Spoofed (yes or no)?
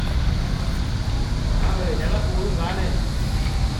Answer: no